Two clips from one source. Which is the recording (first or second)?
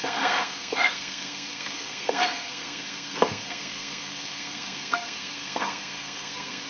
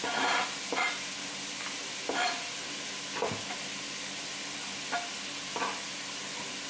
second